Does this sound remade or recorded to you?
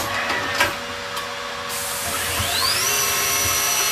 recorded